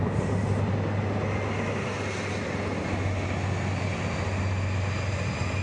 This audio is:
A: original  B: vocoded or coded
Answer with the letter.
A